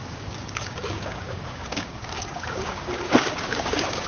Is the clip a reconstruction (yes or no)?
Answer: yes